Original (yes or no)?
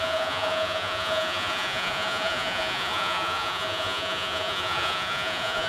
no